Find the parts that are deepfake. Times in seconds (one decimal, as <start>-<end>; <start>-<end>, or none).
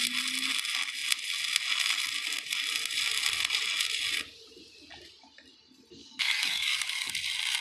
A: 6.0-7.1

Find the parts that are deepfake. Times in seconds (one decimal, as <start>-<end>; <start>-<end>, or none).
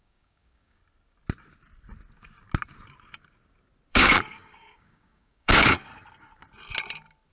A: 0.0-0.8; 3.9-5.9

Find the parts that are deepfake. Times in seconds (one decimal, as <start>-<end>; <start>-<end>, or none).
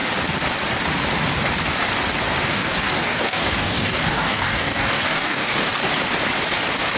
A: 2.5-5.7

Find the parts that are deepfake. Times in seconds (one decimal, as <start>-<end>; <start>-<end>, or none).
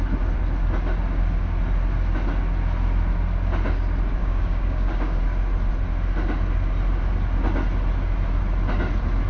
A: 4.2-5.2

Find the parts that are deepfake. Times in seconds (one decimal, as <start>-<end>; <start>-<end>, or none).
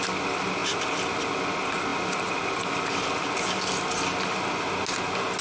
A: none